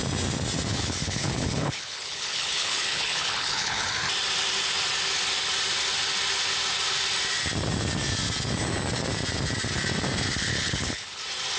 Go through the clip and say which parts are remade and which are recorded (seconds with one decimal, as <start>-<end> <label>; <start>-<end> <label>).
0.0-0.7 recorded; 0.7-3.9 remade; 3.9-10.4 recorded; 10.4-11.2 remade; 11.2-11.6 recorded